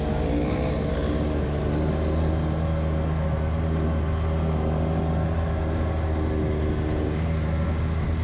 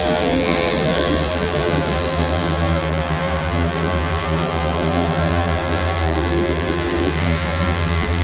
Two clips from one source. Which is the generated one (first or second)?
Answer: second